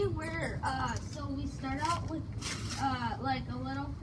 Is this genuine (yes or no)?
yes